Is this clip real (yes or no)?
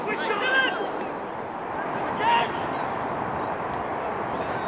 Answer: yes